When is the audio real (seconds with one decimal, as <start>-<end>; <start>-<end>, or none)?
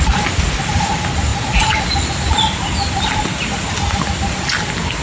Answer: 0.0-5.0